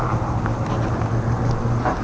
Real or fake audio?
real